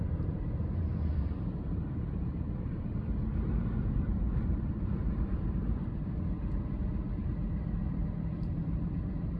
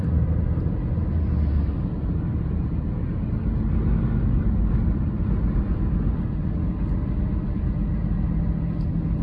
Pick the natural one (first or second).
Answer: second